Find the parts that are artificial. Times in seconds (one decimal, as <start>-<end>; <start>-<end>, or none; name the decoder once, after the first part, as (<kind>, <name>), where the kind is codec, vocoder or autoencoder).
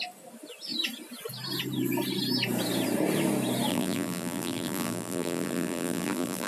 3.7-6.5 (vocoder, BigVGAN v2)